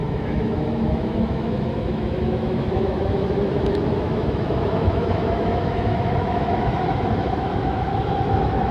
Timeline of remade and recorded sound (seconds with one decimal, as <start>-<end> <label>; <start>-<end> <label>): 0.0-8.7 remade